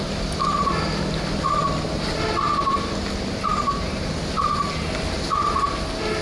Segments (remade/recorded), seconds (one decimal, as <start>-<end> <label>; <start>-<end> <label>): 0.0-3.5 recorded; 3.5-4.1 remade; 4.1-6.2 recorded